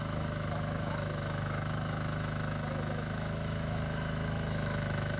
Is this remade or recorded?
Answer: remade